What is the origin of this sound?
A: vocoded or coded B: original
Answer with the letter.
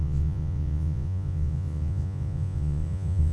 A